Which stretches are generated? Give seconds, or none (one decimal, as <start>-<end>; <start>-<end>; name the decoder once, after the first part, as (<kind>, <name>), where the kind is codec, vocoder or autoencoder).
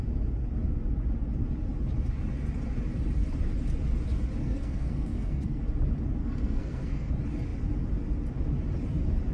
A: 4.4-5.6 (codec, SNAC); 6.2-7.1